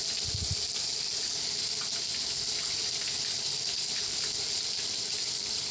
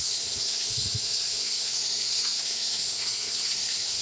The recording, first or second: first